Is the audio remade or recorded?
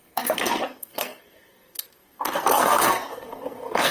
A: remade